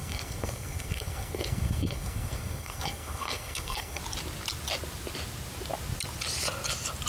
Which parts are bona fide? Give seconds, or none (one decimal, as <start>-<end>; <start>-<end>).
4.0-7.1